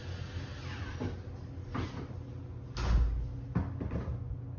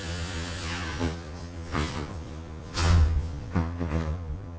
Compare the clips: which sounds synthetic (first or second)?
second